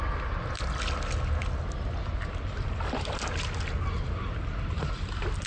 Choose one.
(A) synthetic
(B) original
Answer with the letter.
B